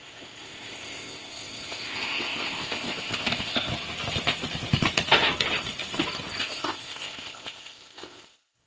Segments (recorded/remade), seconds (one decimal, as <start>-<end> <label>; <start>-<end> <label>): 0.0-3.7 remade; 3.7-6.4 recorded; 6.4-8.7 remade